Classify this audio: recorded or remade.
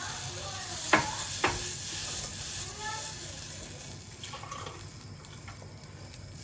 recorded